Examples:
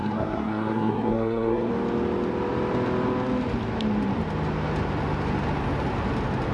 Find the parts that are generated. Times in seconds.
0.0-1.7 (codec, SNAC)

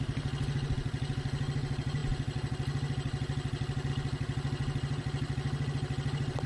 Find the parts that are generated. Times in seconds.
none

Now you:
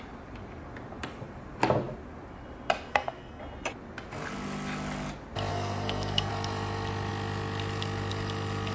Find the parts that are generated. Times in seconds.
2.9-3.4 (codec, SNAC); 5.5-6.3

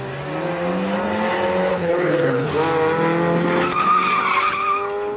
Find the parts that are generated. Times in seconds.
1.7-2.5 (codec, HILCodec)

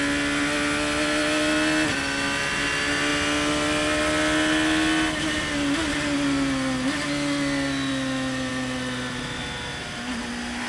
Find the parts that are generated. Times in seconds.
none

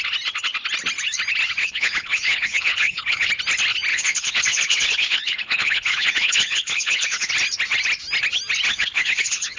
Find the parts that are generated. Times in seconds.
1.6-3.3 (codec, HILCodec); 3.9-7.3; 8.7-9.6

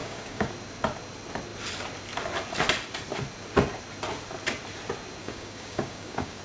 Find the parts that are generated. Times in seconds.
0.0-0.5 (codec, DAC); 5.2-6.4

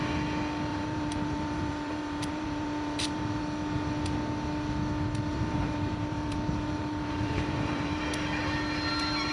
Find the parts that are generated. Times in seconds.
0.7-3.4 (vocoder, BigVGAN v2); 5.3-8.0